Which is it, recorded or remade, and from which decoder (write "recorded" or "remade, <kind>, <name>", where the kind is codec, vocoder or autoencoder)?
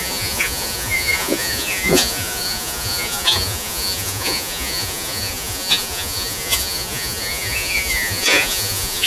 remade, vocoder, Vocos